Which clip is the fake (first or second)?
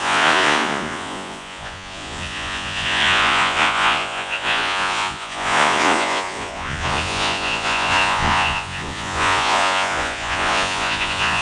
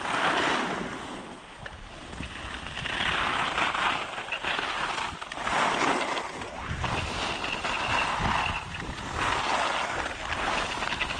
first